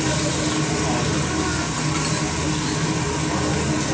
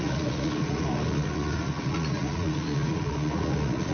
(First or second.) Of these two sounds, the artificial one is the second